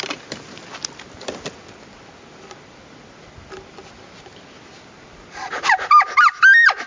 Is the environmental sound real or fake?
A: real